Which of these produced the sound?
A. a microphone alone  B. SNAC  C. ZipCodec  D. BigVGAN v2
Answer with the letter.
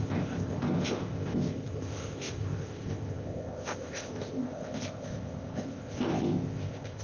C